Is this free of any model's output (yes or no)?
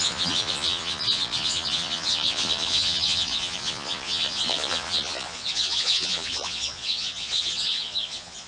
no